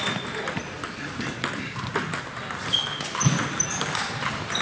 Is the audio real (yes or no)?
yes